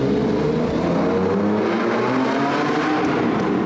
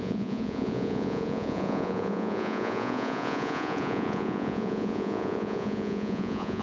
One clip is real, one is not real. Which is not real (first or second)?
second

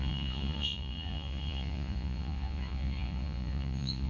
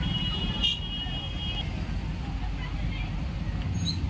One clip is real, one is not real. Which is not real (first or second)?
first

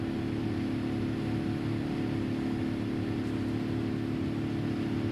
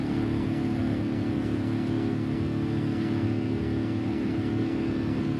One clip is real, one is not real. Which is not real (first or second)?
second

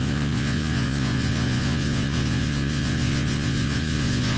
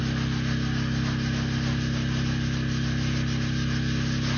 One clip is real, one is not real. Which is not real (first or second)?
first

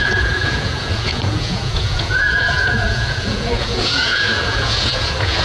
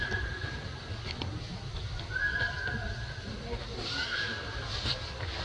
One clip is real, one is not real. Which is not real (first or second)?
first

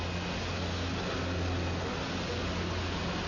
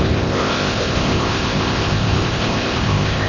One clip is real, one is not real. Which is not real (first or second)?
second